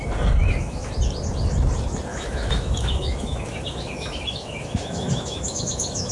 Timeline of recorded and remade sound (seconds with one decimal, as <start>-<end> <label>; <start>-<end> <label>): 0.0-0.4 recorded; 0.4-0.9 remade; 0.9-2.1 recorded; 2.1-6.1 remade